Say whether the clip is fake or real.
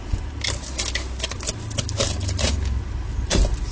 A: real